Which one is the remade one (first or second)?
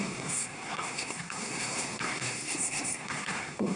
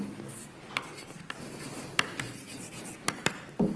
first